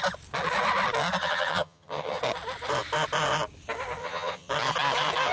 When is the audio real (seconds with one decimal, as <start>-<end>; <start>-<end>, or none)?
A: 0.0-1.2; 2.2-4.0; 4.5-5.3